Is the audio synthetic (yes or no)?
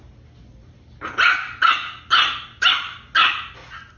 no